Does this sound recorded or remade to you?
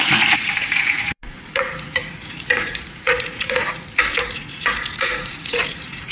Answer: remade